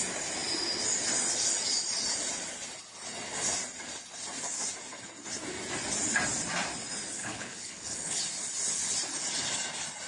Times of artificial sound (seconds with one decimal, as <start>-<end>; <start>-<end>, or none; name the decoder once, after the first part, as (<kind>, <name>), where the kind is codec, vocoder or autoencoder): 7.2-8.2 (codec, HILCodec)